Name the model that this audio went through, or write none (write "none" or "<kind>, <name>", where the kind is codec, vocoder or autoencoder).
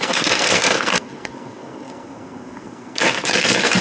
codec, SNAC